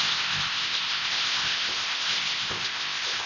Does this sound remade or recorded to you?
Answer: remade